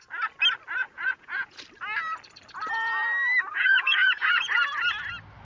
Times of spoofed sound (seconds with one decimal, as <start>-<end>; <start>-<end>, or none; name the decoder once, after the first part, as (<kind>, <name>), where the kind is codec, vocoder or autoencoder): 0.8-1.6 (vocoder, Vocos); 3.5-4.7